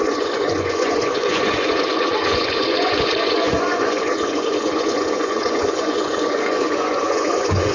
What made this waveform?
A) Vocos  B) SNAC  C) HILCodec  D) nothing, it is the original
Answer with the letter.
A